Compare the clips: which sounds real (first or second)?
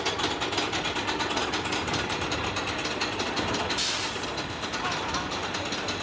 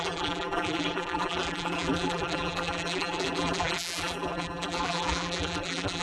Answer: first